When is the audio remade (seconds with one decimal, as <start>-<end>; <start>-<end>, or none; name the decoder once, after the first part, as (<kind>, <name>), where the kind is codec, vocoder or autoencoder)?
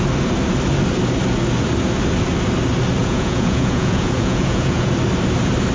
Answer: 3.0-4.9 (vocoder, Vocos)